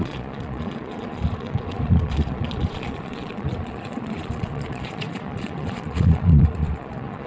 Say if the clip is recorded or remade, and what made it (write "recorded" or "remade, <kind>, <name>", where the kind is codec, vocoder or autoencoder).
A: remade, vocoder, Vocos